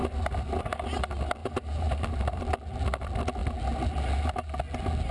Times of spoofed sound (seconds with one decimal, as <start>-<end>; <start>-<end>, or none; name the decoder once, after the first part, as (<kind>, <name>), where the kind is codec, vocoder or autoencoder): 0.0-0.6 (vocoder, BigVGAN v2); 1.4-2.4

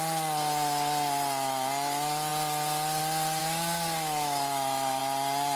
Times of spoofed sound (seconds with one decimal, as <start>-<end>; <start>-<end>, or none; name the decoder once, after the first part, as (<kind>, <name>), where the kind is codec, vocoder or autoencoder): 3.4-5.0 (autoencoder, DAC-VAE)